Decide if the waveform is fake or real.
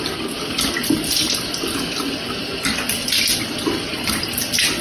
real